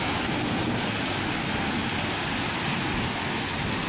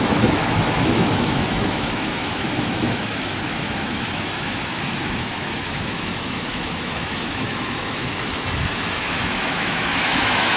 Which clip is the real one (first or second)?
first